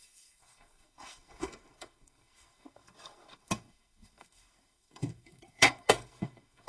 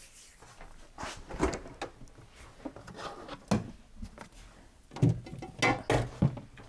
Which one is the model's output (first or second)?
first